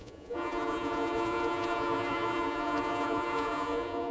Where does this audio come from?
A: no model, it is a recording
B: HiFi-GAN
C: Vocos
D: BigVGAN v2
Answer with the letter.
C